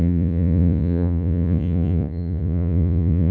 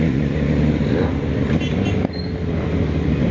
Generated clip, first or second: first